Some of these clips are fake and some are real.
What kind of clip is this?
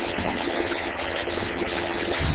fake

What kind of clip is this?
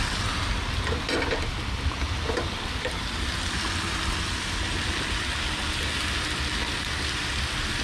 real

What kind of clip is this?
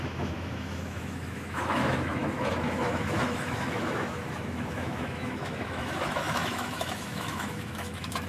fake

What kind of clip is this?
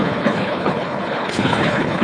fake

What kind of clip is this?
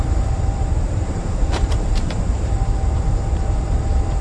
fake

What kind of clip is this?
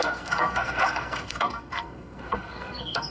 fake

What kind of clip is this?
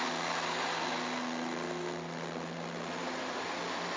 real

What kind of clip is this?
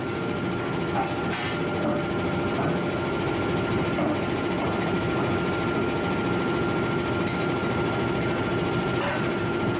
real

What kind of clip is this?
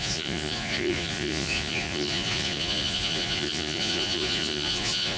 fake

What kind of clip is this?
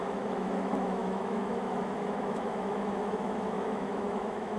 fake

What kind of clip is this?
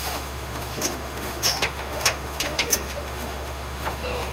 fake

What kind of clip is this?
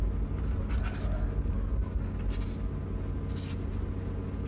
real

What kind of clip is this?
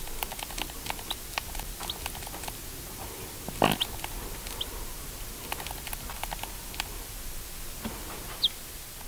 real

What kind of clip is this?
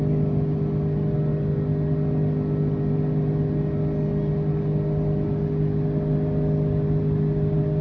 real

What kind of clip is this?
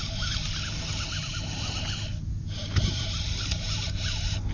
real